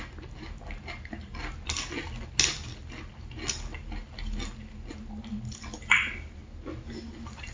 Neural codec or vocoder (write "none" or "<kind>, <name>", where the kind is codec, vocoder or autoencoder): none